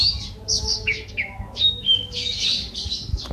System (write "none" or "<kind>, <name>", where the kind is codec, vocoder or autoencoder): codec, DAC